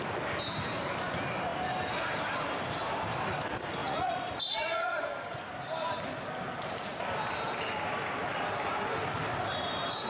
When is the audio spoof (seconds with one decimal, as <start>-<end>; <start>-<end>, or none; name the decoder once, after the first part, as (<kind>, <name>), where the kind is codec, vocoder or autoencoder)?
3.8-5.1 (vocoder, Vocos)